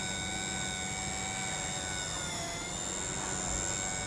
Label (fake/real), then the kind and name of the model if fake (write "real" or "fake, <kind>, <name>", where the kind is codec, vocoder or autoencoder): real